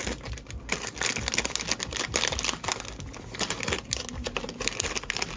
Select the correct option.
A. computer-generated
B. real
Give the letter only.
B